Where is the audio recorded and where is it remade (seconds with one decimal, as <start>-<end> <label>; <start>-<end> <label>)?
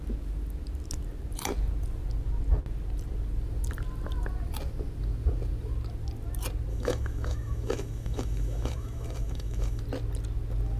0.0-6.7 recorded; 6.7-9.8 remade; 9.8-10.8 recorded